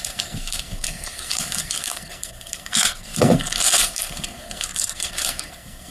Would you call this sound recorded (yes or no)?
no